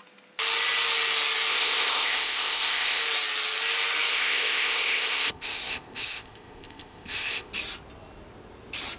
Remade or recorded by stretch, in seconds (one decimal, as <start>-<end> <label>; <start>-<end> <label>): 0.0-1.5 recorded; 1.5-3.0 remade; 3.0-4.1 recorded; 4.1-7.5 remade; 7.5-9.0 recorded